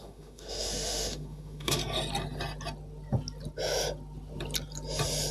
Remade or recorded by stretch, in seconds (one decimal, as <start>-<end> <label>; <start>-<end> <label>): 0.0-1.8 remade; 1.8-5.3 recorded